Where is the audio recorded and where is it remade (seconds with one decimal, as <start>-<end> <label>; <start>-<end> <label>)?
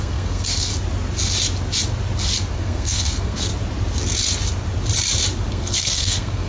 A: 0.0-0.7 remade; 0.7-2.5 recorded; 2.5-3.5 remade; 3.5-5.5 recorded; 5.5-6.5 remade